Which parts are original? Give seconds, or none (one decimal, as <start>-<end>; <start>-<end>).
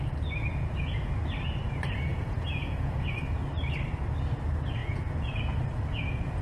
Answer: 0.0-0.5; 1.1-2.1; 3.2-4.8